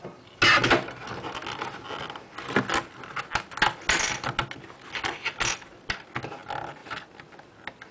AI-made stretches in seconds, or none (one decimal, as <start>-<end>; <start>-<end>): none